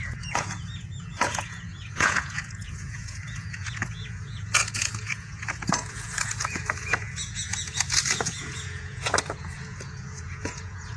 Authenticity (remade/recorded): remade